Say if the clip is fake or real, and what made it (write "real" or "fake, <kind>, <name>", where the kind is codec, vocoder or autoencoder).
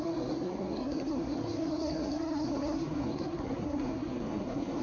fake, codec, SNAC